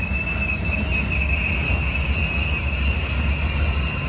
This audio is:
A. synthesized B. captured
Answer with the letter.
B